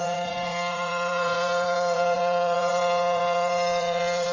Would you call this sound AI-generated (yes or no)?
yes